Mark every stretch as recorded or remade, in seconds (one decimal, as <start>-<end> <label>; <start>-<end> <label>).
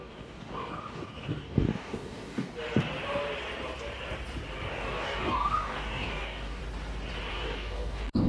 0.0-2.5 remade; 2.5-4.7 recorded; 4.7-6.6 remade; 6.6-7.3 recorded; 7.3-8.3 remade